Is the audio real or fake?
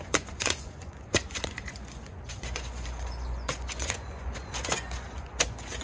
fake